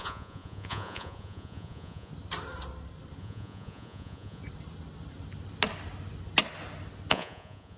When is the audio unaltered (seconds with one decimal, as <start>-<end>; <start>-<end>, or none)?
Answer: 2.1-3.2; 4.4-7.1